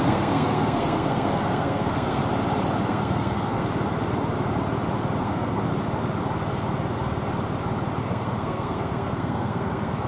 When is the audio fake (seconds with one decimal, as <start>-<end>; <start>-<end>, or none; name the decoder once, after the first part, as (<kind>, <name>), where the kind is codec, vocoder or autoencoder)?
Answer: 0.0-2.2 (codec, SNAC); 2.9-3.6; 5.2-5.7; 8.0-10.1